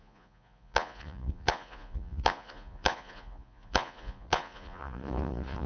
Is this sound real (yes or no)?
no